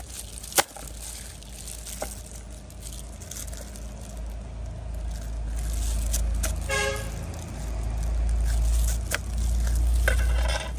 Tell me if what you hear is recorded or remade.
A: recorded